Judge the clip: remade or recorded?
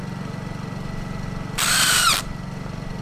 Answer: recorded